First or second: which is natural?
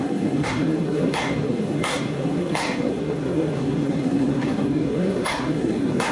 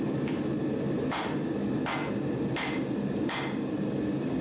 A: second